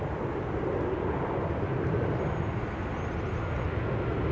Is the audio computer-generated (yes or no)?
no